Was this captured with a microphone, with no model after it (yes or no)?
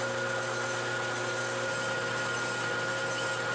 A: yes